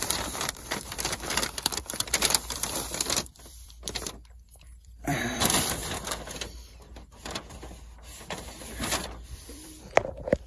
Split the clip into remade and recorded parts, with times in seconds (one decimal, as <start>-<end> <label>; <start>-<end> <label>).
0.0-5.8 remade; 5.8-8.6 recorded; 8.6-10.5 remade